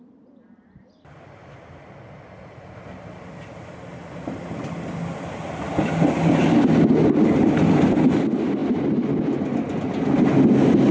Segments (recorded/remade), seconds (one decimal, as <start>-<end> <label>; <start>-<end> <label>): 0.0-10.9 recorded